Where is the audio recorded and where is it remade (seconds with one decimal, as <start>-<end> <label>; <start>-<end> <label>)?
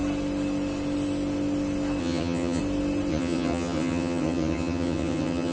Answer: 0.0-2.0 recorded; 2.0-2.6 remade; 2.6-3.1 recorded; 3.1-5.5 remade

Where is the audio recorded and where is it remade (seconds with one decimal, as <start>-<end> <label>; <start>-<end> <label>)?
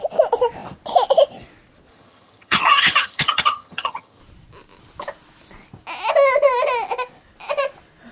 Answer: 0.0-1.9 recorded; 1.9-4.2 remade; 4.2-8.1 recorded